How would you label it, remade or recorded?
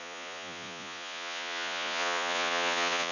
remade